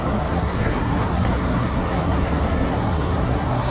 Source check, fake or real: fake